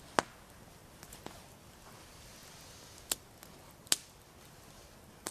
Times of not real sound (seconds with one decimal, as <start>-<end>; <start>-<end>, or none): none